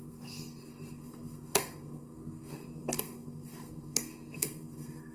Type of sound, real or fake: fake